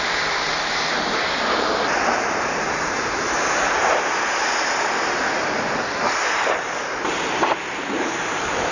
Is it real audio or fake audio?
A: fake